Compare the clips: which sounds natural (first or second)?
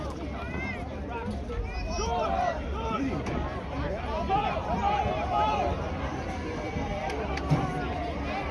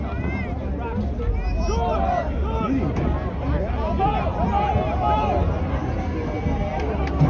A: second